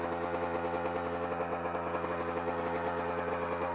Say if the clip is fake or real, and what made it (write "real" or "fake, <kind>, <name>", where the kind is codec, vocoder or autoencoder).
real